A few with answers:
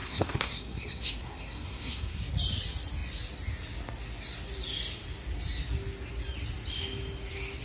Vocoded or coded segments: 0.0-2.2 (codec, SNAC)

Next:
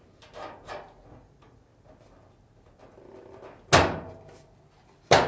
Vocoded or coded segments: 1.1-1.7 (vocoder, Vocos)

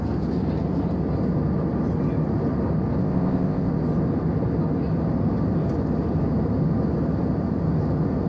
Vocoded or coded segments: 3.0-3.7 (codec, ZipCodec)